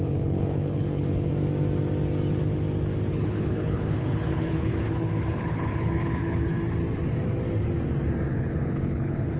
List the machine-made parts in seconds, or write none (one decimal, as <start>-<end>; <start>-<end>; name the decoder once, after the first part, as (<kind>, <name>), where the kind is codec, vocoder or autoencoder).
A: 0.0-1.3 (codec, HILCodec); 3.1-6.5; 8.3-9.4